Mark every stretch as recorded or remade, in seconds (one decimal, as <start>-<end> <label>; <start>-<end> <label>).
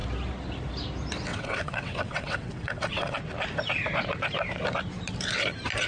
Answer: 0.0-1.3 recorded; 1.3-3.2 remade; 3.2-5.9 recorded